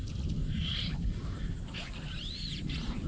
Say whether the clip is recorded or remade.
recorded